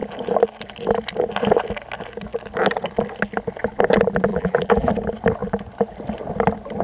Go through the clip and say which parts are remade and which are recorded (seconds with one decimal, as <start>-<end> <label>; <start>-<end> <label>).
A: 0.0-4.3 recorded; 4.3-4.9 remade; 4.9-6.8 recorded